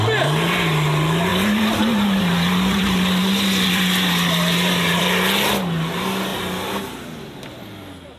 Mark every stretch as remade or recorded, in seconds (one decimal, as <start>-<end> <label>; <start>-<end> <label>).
0.0-1.3 recorded; 1.3-5.0 remade; 5.0-8.2 recorded